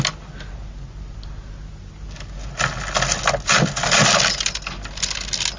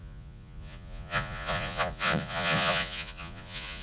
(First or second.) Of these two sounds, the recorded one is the first